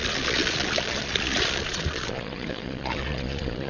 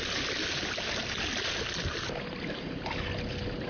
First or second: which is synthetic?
first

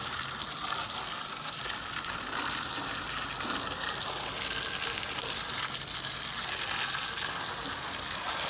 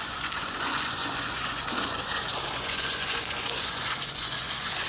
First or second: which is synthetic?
second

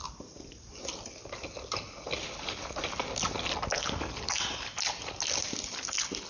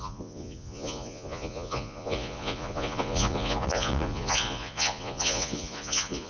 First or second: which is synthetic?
second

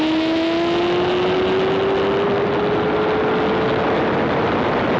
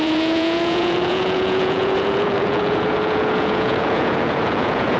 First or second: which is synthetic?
second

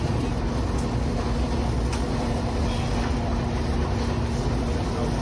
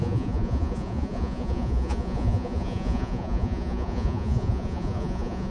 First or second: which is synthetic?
second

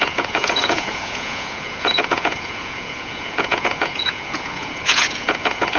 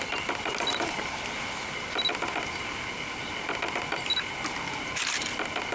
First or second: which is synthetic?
first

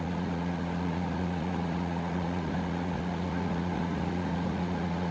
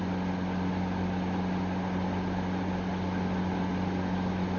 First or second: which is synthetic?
first